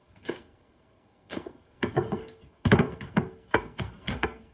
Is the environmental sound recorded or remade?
remade